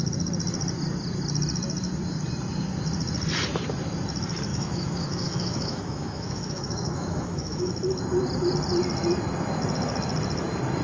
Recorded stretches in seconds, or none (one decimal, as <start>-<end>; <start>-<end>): 0.0-4.5; 7.7-10.8